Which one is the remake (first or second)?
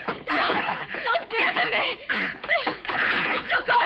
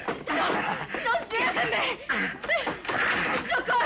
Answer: first